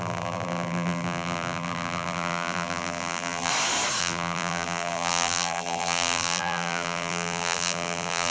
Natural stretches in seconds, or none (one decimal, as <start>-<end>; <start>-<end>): 3.5-4.0